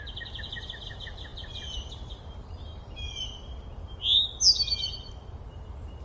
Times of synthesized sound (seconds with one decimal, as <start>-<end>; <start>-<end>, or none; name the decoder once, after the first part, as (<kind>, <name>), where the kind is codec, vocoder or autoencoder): none